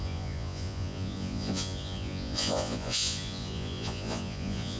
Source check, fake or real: fake